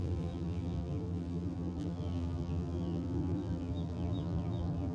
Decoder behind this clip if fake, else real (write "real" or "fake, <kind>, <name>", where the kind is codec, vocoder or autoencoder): fake, vocoder, BigVGAN v2